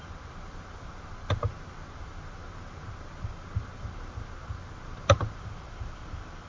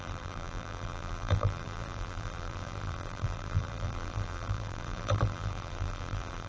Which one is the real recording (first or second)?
first